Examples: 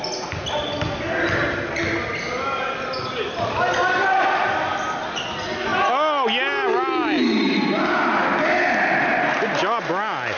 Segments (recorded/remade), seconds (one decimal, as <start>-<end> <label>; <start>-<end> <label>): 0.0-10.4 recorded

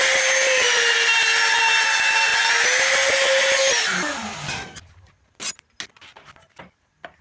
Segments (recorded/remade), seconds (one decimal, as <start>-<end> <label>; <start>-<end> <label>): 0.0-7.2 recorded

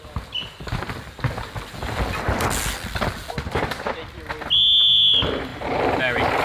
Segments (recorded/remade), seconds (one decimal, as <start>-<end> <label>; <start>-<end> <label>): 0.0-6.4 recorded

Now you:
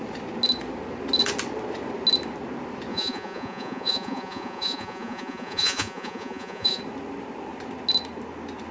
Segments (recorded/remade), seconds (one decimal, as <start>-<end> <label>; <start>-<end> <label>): 0.0-2.9 recorded; 2.9-6.8 remade; 6.8-8.7 recorded

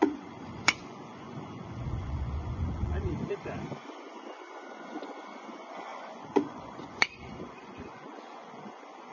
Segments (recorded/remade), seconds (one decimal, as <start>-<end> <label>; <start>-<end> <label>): 0.0-9.1 remade